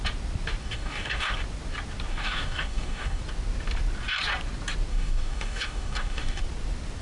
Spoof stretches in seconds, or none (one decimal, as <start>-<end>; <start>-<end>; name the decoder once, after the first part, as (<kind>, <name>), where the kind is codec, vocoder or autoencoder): 0.6-1.3 (codec, DAC); 2.1-3.2; 4.9-6.4